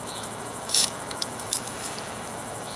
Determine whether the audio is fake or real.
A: fake